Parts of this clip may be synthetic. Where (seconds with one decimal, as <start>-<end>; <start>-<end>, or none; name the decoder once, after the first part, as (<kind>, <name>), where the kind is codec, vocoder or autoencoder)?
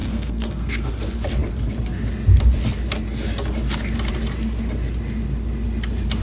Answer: 0.0-0.9 (codec, SNAC)